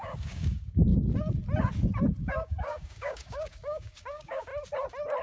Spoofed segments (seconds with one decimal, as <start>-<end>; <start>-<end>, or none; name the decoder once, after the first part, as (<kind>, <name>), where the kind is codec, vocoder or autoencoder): 0.0-0.9 (codec, DAC); 2.2-4.5